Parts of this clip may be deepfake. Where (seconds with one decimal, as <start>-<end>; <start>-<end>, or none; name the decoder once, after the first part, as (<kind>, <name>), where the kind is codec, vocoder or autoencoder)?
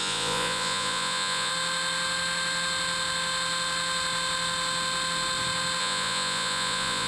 0.0-1.5 (vocoder, Vocos); 5.8-7.1